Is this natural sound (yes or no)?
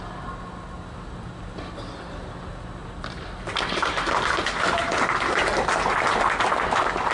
yes